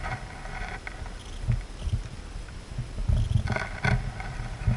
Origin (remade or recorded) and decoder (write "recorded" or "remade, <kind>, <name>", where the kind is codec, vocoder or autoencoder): recorded